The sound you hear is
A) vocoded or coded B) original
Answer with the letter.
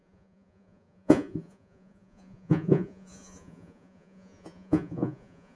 A